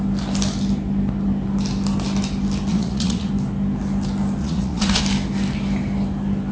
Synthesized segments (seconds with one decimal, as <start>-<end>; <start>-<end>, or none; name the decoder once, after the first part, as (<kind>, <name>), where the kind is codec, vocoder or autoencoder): 2.7-3.3 (vocoder, Vocos); 4.4-5.0